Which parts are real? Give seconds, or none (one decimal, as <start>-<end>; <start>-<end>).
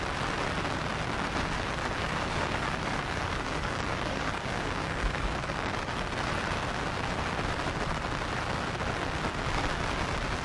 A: 0.0-2.0; 5.7-10.4